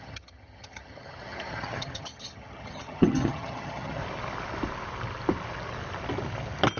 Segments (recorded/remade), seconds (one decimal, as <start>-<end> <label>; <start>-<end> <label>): 0.0-4.0 remade; 4.0-6.8 recorded